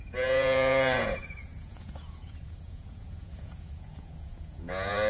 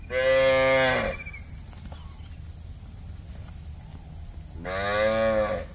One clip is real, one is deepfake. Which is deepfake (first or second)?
first